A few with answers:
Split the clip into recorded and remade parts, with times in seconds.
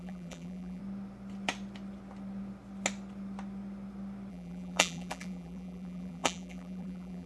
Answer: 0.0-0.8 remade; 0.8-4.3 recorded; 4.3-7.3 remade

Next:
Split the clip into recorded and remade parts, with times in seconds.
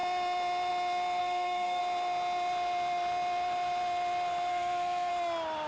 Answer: 0.0-1.2 recorded; 1.2-1.8 remade; 1.8-4.5 recorded; 4.5-5.1 remade; 5.1-5.7 recorded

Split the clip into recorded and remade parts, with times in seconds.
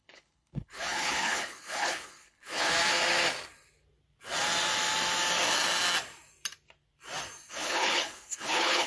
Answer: 0.0-2.7 remade; 2.7-7.5 recorded; 7.5-8.9 remade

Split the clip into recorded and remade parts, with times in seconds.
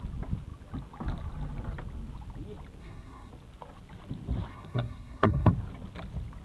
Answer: 0.0-2.8 recorded; 2.8-3.3 remade; 3.3-4.5 recorded; 4.5-5.5 remade; 5.5-6.4 recorded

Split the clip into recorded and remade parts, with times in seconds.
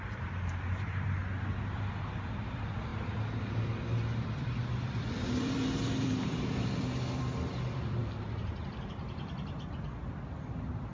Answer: 0.0-1.2 remade; 1.2-1.7 recorded; 1.7-8.0 remade; 8.0-8.6 recorded; 8.6-10.9 remade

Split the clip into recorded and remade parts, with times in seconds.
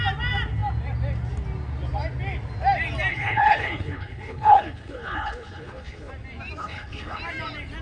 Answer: 0.0-3.1 recorded; 3.1-6.1 remade; 6.1-6.6 recorded; 6.6-7.2 remade; 7.2-7.8 recorded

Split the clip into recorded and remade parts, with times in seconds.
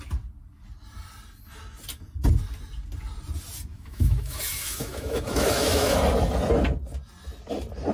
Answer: 0.0-3.7 recorded; 3.7-6.0 remade; 6.0-7.9 recorded